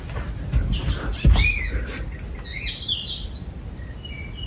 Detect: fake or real real